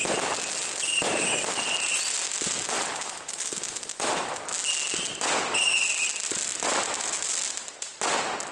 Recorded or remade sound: recorded